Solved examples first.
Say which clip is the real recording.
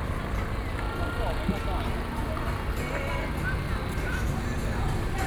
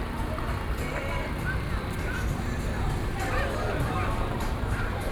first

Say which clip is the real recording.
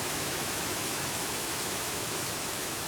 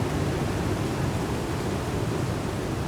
second